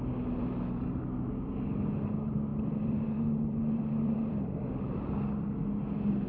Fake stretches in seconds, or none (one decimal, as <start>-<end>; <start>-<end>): 2.5-4.7